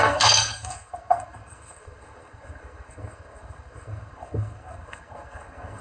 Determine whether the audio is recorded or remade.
remade